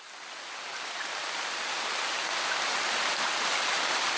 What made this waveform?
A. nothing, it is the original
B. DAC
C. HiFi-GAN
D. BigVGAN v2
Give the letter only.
A